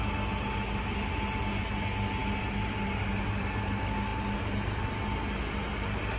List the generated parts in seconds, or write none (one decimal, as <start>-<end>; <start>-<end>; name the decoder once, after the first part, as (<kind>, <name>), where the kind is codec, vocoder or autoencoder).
none